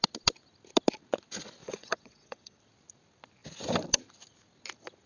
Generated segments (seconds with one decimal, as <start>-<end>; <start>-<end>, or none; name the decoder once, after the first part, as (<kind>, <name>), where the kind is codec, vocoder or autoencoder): 1.6-2.6 (vocoder, WaveNeXt)